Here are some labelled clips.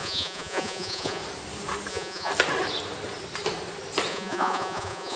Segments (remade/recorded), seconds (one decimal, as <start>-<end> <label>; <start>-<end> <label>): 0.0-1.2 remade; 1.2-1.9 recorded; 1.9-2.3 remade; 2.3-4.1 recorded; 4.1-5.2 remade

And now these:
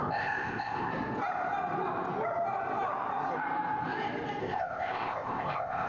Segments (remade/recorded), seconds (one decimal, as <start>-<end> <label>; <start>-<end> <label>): 0.0-0.9 remade; 0.9-4.4 recorded; 4.4-5.9 remade

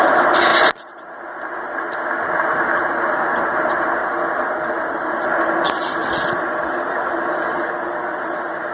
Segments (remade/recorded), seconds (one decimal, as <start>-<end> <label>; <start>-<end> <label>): 0.0-8.7 recorded